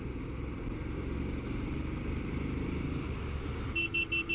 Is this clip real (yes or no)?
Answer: yes